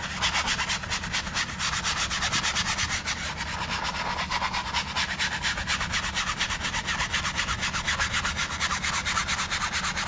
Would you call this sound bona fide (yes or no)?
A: yes